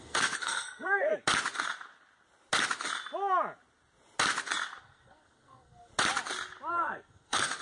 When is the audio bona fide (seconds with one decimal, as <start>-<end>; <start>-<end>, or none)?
1.1-4.8; 5.9-6.7